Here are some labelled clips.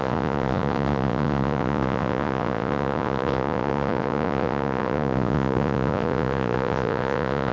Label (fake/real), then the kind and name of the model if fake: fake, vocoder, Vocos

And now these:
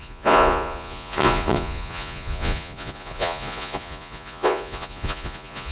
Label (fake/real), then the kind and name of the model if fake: fake, vocoder, Vocos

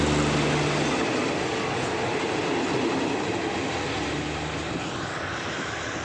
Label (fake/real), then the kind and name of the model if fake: real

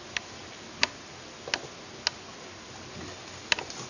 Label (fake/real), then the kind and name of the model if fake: real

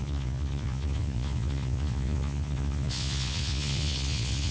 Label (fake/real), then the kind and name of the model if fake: fake, vocoder, Vocos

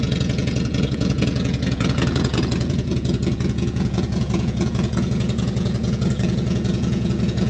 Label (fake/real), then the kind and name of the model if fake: fake, vocoder, Vocos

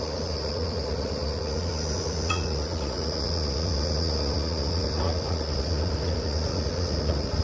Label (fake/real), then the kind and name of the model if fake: fake, vocoder, Vocos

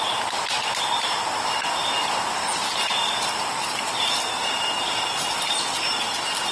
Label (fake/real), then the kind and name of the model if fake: real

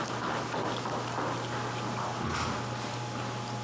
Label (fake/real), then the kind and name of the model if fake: real